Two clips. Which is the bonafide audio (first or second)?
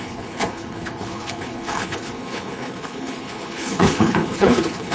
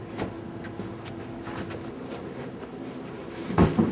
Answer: second